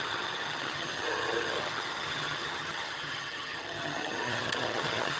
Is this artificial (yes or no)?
yes